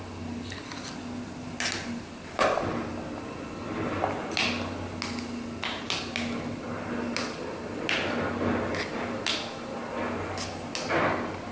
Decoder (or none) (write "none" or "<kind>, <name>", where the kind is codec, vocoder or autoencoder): none